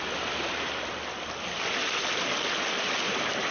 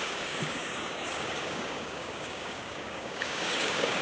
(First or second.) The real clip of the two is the first